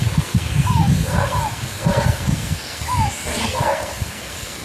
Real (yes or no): no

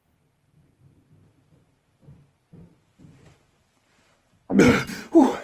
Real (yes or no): no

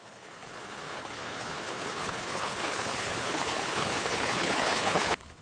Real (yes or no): no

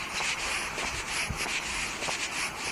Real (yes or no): yes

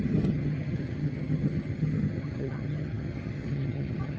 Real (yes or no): no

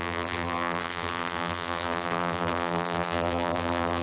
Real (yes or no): no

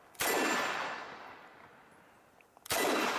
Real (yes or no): yes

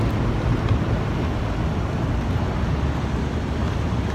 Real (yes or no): yes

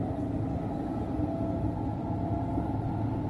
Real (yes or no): yes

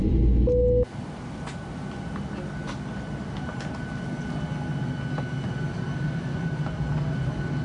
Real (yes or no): yes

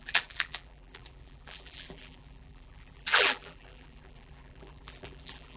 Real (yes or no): no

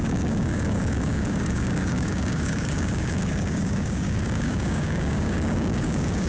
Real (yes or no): no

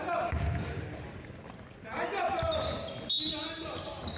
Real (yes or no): yes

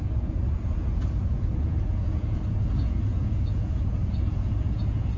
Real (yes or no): no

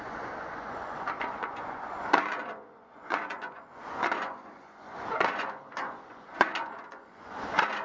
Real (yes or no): no